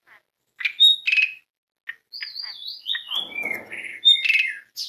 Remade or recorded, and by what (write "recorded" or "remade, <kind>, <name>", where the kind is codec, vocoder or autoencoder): recorded